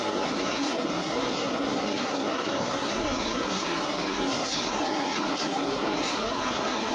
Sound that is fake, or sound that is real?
fake